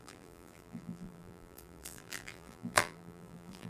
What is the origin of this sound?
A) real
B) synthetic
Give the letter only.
B